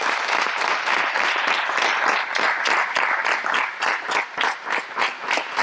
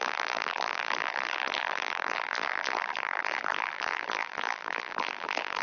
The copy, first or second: second